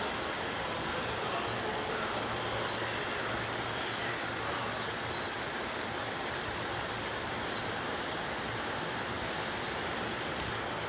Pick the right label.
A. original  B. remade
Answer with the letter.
A